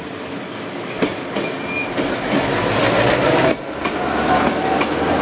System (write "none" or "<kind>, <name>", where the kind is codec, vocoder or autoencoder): none